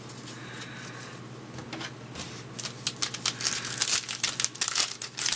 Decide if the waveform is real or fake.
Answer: real